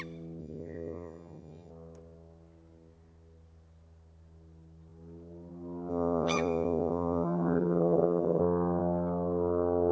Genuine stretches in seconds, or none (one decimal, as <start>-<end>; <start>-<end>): 0.0-0.4; 1.7-5.9; 8.4-9.9